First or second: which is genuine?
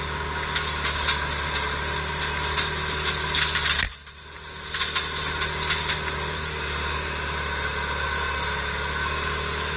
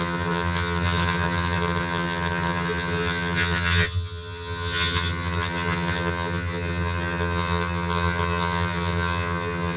first